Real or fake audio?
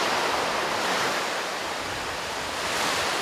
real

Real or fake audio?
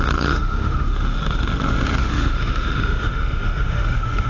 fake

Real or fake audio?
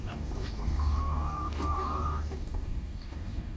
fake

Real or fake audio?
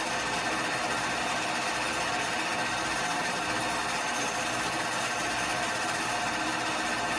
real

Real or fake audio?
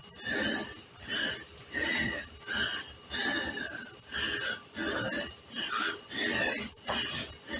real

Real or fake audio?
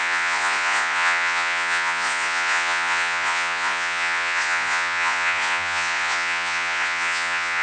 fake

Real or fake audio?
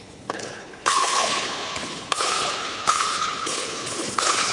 fake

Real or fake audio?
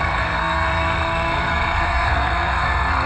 fake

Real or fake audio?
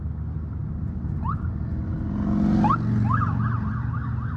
real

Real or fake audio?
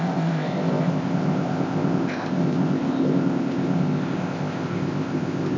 fake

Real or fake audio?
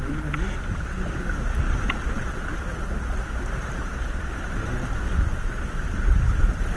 real